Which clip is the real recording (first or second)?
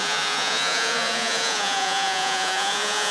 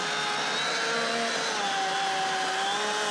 second